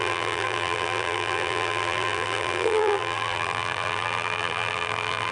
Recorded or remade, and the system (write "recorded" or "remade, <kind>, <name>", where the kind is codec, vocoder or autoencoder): remade, vocoder, BigVGAN v2